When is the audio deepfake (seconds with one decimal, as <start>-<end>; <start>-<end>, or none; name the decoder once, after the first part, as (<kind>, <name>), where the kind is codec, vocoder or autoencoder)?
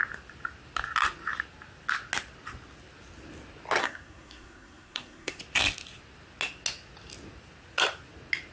3.8-5.4 (codec, SNAC)